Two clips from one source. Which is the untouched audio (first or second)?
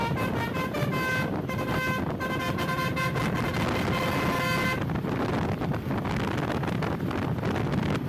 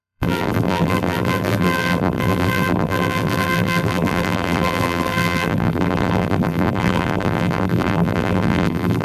first